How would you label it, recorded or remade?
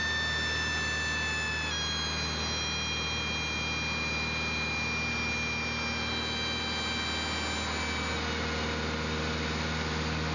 recorded